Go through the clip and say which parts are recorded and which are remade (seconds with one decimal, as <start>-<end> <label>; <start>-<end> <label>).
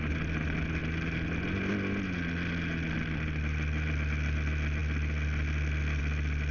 0.0-6.5 recorded